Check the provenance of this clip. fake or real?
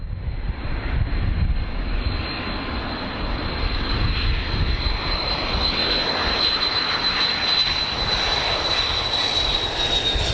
real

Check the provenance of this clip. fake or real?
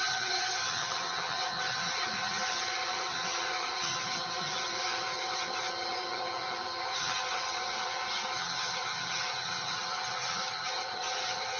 fake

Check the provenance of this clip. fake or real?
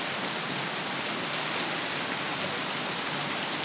real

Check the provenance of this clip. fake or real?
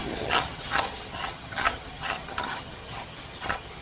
fake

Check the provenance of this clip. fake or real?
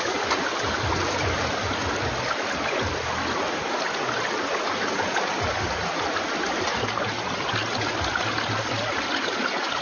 real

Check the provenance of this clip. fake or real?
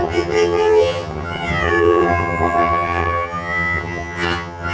fake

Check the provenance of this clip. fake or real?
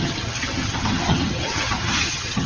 fake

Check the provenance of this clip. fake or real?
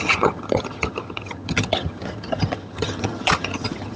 fake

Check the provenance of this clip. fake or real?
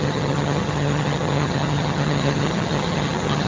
fake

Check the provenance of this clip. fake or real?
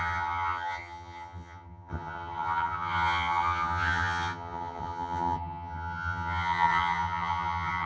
fake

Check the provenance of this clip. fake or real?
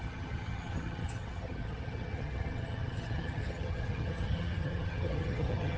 fake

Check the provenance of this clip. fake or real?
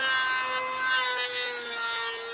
real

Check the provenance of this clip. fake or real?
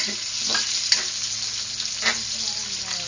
real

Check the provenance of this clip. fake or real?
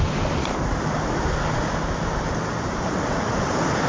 real